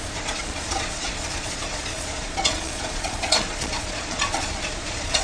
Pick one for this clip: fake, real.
fake